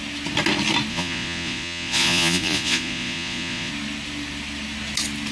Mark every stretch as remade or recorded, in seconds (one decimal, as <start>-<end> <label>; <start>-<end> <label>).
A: 0.0-0.9 recorded; 0.9-3.7 remade; 3.7-5.3 recorded